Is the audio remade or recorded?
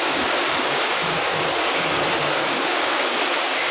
remade